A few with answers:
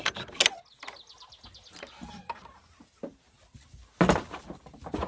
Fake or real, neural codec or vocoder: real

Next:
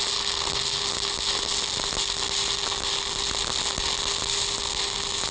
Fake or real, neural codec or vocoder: real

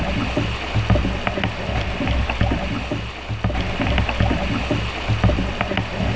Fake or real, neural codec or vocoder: real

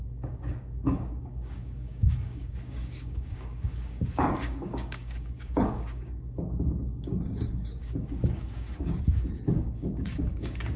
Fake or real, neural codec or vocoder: fake, codec, DAC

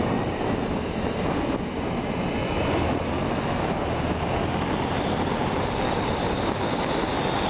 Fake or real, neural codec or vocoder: real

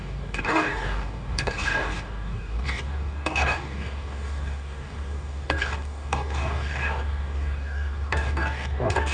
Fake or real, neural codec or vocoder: fake, codec, DAC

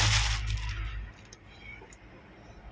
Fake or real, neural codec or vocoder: real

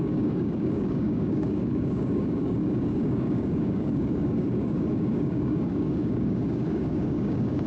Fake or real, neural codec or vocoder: fake, codec, DAC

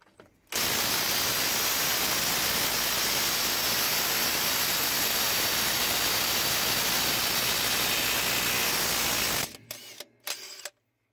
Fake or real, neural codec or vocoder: real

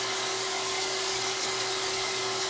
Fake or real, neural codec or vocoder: fake, codec, DAC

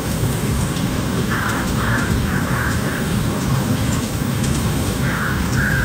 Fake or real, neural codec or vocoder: fake, codec, DAC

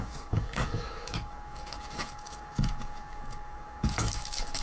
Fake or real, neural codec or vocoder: fake, codec, DAC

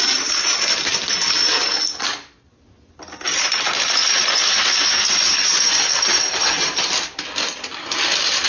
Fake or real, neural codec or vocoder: real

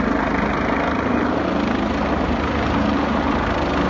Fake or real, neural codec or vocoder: real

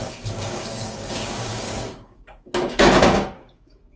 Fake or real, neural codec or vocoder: fake, codec, DAC